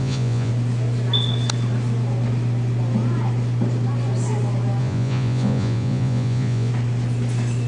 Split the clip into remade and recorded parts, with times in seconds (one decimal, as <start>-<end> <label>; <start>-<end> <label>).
0.0-0.5 remade; 0.5-4.8 recorded; 4.8-6.7 remade; 6.7-7.7 recorded